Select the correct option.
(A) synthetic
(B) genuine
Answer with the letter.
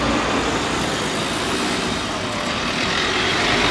B